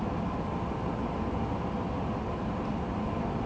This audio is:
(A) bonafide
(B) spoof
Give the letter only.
A